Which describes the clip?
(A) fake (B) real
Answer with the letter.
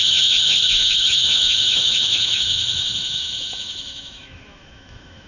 A